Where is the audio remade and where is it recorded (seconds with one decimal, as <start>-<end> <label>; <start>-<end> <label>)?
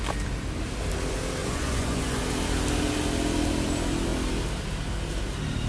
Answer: 0.0-1.4 recorded; 1.4-2.2 remade; 2.2-5.7 recorded